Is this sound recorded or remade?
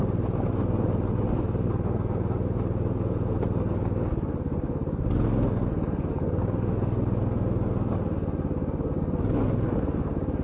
recorded